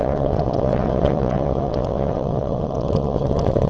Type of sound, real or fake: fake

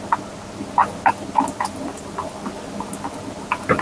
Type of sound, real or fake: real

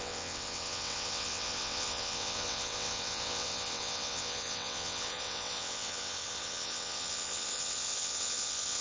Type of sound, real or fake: fake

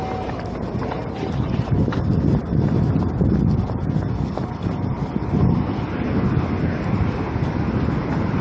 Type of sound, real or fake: real